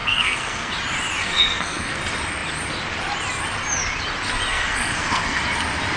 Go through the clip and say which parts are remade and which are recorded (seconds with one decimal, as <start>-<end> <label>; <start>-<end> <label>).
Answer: 0.0-0.7 remade; 0.7-1.2 recorded; 1.2-2.0 remade; 2.0-4.5 recorded; 4.5-5.4 remade; 5.4-6.0 recorded